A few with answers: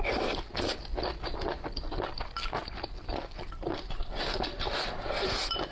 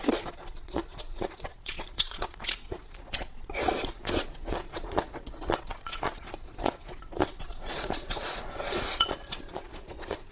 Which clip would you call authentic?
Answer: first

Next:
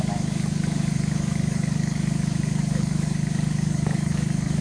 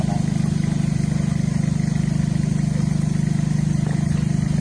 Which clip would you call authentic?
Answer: second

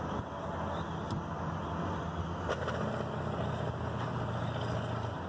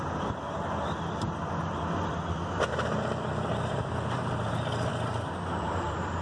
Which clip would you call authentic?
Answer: first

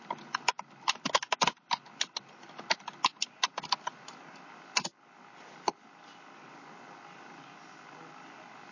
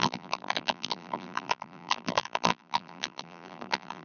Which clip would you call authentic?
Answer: first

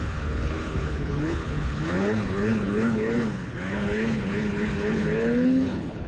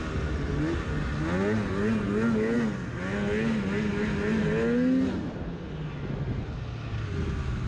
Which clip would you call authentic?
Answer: second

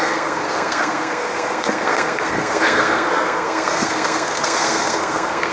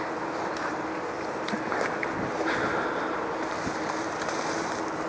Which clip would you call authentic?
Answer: second